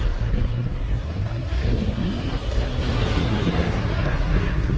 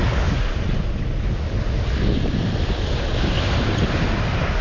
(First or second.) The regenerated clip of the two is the first